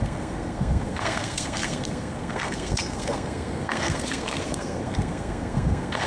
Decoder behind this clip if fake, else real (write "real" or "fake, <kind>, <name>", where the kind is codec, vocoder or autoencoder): fake, codec, SNAC